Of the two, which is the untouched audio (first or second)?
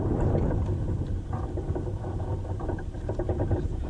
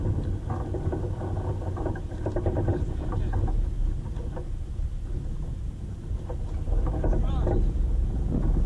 second